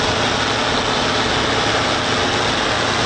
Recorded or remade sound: recorded